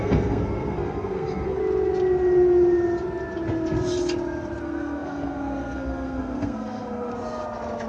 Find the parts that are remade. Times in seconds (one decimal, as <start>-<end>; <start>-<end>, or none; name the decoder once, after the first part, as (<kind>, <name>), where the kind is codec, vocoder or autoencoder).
0.0-1.6 (codec, SNAC); 4.6-7.1

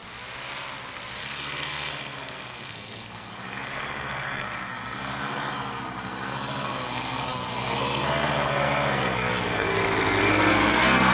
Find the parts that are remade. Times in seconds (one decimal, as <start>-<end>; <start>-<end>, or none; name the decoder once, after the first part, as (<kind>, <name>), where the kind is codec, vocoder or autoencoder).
1.2-9.8 (codec, SNAC); 10.3-11.1

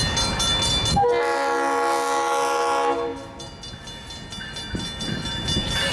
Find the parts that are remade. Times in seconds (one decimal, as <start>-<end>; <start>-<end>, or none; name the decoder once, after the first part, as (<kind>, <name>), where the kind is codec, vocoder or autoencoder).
none

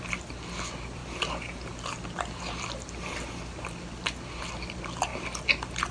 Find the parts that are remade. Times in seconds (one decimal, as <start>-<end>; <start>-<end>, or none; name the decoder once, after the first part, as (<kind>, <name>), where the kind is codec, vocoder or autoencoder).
none

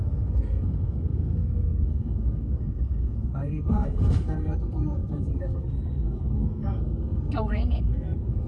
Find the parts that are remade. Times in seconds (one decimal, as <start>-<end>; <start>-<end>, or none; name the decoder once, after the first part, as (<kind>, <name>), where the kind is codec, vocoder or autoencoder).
0.0-8.5 (codec, SNAC)

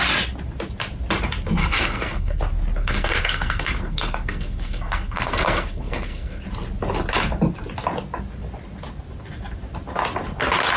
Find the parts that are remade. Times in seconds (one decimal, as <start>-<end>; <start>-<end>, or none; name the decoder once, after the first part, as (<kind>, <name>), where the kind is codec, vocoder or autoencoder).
1.6-2.4 (codec, SNAC); 2.8-6.4

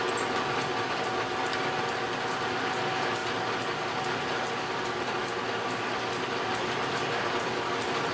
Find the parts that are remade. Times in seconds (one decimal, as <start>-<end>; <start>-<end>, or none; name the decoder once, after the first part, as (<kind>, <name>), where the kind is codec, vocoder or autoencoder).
none